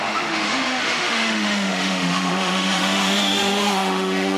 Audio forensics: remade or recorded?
remade